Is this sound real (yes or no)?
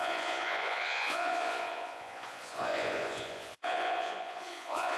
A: no